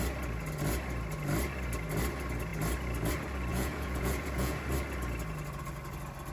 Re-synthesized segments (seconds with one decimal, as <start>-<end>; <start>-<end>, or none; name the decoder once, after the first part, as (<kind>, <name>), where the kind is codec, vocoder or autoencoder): 3.5-4.6 (vocoder, Vocos)